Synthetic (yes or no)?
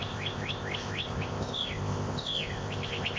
yes